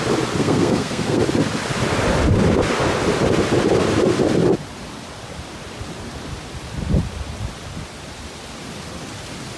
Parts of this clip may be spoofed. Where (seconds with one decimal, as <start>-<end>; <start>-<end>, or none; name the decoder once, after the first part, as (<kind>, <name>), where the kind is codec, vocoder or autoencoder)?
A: 0.4-1.2 (codec, SNAC)